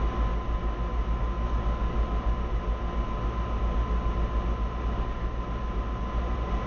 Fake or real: real